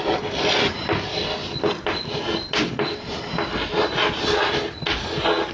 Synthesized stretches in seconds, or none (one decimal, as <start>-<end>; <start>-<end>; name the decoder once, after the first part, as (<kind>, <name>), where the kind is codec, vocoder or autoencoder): none